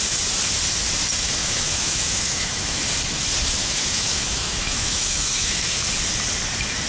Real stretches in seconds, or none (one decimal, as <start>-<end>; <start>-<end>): 0.0-1.4; 2.8-3.6; 5.9-6.9